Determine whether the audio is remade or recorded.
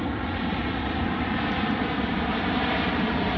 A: remade